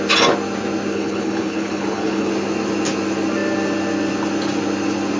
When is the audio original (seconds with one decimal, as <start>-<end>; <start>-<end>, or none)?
0.0-0.9; 2.3-5.2